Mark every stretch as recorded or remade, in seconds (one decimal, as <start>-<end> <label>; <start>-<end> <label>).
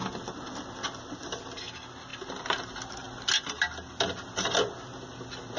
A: 0.0-5.6 recorded